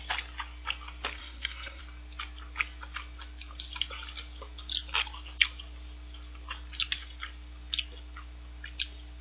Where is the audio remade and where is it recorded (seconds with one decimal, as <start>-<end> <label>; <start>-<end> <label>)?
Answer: 0.0-1.2 recorded; 1.2-1.8 remade; 1.8-9.2 recorded